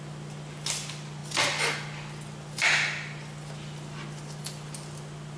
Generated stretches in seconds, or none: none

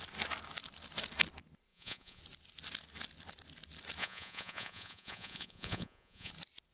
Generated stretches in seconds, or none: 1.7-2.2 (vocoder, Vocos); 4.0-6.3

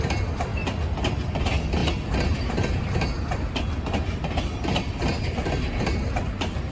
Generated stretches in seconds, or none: none

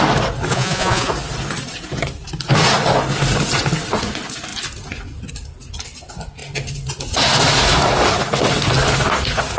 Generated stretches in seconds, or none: 0.5-1.1 (vocoder, Vocos)

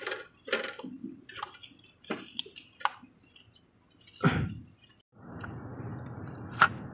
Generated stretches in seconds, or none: none